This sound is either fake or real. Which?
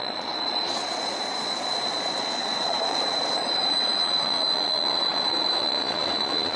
fake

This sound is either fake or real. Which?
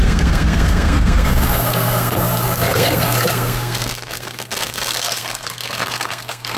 fake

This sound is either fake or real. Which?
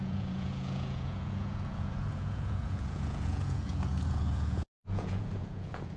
fake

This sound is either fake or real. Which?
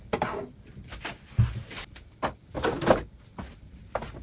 real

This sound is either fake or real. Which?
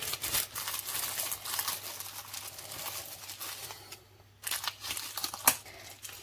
real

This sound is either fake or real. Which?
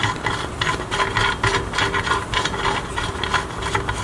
real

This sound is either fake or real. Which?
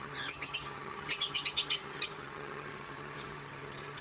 fake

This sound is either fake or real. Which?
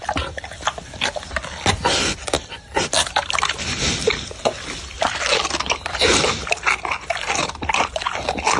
real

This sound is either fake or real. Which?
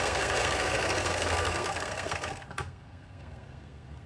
fake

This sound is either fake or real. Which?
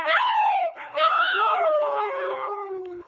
fake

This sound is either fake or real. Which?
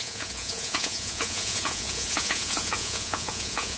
fake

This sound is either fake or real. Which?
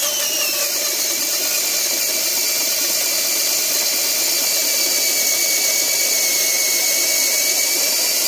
real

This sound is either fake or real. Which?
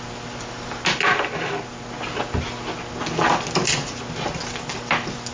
real